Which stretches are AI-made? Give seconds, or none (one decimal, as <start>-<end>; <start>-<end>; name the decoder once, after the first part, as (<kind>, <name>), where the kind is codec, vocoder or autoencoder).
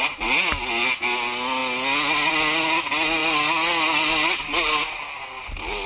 none